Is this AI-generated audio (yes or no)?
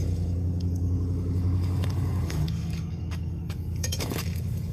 yes